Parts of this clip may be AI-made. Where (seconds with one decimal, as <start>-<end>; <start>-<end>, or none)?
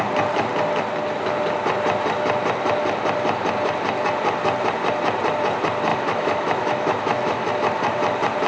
5.9-7.5